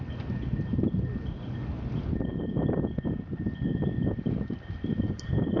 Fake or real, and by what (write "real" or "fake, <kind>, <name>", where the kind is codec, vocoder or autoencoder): real